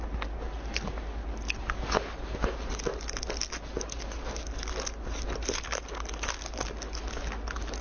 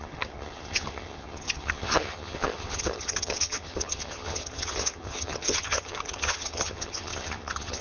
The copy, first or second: second